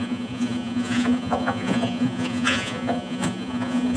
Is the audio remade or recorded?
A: remade